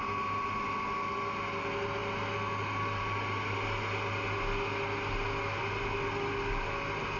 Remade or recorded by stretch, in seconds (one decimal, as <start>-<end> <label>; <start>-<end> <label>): 0.0-7.2 recorded